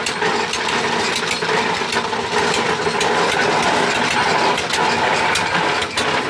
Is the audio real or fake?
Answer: real